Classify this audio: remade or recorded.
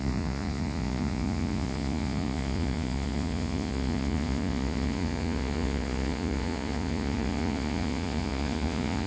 remade